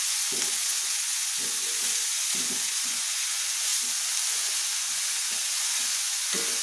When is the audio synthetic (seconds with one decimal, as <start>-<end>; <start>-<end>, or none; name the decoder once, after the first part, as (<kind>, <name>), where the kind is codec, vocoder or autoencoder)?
0.0-3.7 (vocoder, Vocos); 4.3-6.6